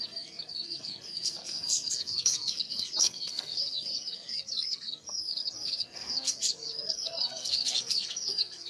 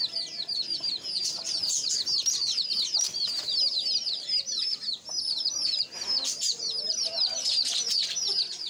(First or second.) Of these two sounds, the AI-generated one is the first